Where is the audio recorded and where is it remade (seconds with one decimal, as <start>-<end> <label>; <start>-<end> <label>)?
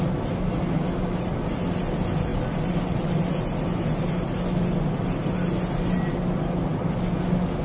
0.0-7.6 recorded